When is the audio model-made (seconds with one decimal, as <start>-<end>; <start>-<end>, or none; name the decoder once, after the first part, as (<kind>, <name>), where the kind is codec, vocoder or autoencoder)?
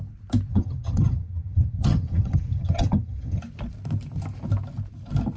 0.5-3.4 (vocoder, HiFi-GAN)